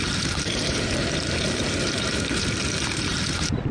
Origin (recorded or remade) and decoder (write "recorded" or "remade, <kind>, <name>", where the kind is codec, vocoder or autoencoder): remade, vocoder, BigVGAN v2